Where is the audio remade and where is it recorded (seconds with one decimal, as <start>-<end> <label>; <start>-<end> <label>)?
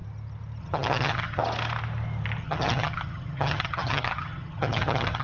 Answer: 0.0-0.6 recorded; 0.6-1.4 remade; 1.4-2.4 recorded; 2.4-5.2 remade